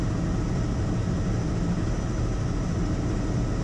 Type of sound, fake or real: real